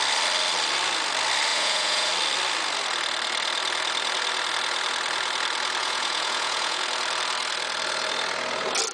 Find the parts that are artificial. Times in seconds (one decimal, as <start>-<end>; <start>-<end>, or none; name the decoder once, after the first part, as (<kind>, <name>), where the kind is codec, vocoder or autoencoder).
1.5-2.1 (vocoder, Vocos); 5.8-6.8